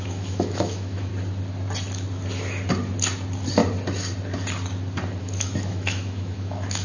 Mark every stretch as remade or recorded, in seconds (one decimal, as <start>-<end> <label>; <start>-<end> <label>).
0.0-1.1 remade; 1.1-5.2 recorded; 5.2-6.8 remade